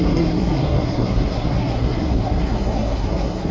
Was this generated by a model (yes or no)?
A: yes